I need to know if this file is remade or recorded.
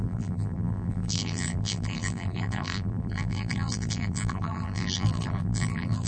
remade